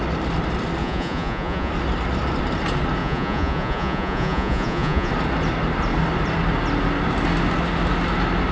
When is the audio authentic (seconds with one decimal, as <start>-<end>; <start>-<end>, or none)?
0.0-0.8; 1.7-3.0; 5.1-8.5